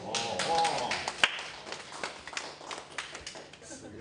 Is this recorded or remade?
recorded